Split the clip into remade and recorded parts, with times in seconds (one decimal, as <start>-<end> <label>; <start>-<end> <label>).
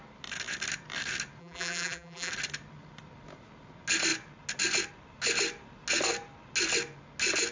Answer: 0.0-1.4 recorded; 1.4-2.3 remade; 2.3-7.5 recorded